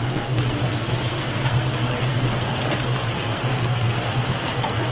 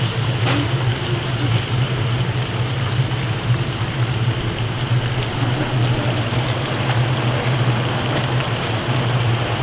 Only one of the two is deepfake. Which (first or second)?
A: first